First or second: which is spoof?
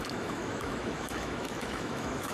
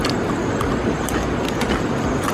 first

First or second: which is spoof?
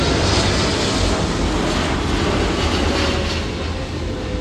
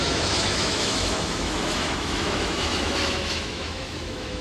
second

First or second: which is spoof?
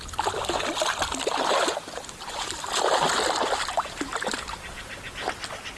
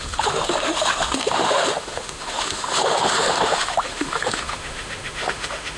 second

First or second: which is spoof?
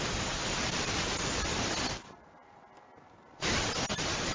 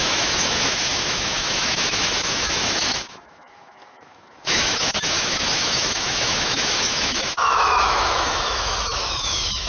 second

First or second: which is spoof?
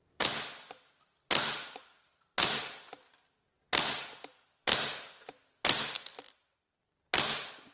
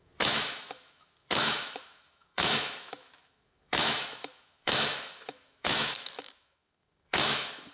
second